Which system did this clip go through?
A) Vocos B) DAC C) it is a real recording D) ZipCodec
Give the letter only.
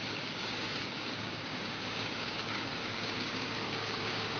B